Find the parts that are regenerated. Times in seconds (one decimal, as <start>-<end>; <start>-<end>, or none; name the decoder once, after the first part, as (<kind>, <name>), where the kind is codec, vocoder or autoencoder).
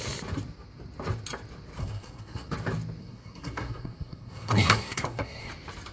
1.8-2.5 (codec, SNAC); 3.0-5.5